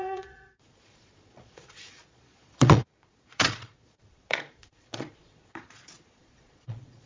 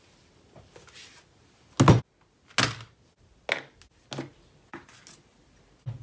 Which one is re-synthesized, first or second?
first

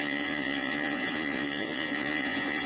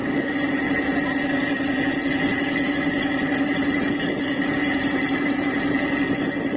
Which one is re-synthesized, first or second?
first